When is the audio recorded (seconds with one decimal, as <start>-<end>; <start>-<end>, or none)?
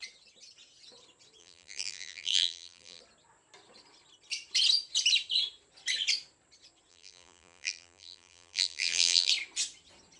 0.0-1.4; 3.0-6.9; 9.3-10.2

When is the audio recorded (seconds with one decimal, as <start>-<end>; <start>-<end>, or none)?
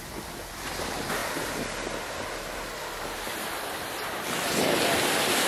0.0-5.5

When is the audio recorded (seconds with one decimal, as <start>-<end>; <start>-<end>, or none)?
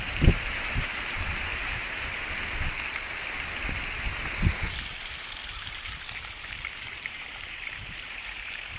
1.5-6.5